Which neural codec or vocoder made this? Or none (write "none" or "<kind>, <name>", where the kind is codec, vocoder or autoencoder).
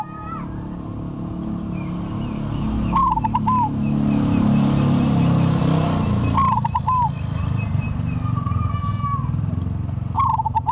none